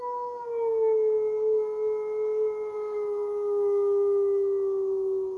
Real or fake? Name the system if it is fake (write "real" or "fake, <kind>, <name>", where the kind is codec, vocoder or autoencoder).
real